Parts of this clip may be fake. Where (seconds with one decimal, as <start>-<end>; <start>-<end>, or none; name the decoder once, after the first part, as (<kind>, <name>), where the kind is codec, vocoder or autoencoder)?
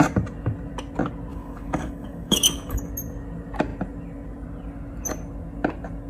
1.3-2.9 (codec, DAC)